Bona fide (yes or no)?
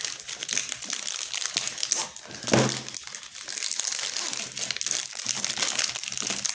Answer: yes